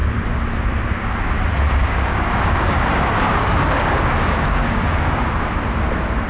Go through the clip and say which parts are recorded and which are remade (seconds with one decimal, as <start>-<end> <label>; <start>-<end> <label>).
0.0-2.1 recorded; 2.1-5.3 remade; 5.3-6.3 recorded